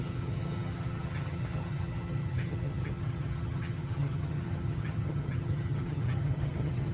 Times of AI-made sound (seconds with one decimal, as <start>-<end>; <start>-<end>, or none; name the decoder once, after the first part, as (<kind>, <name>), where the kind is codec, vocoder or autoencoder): 0.0-6.9 (vocoder, HiFi-GAN)